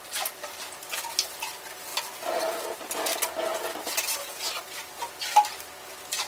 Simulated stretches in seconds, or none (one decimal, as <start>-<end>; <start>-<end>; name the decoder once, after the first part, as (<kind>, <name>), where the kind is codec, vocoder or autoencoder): none